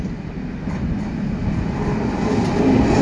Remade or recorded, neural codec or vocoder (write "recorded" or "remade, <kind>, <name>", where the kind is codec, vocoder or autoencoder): recorded